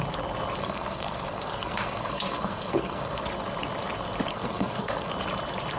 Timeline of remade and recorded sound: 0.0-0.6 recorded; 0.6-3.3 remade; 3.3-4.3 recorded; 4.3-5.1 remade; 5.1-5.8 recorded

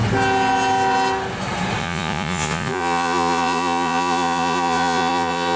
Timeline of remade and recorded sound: 0.0-1.8 recorded; 1.8-5.6 remade

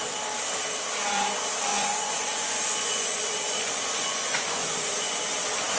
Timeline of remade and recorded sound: 0.0-1.7 recorded; 1.7-5.2 remade; 5.2-5.8 recorded